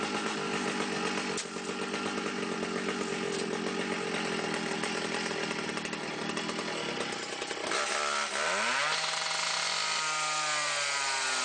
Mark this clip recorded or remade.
recorded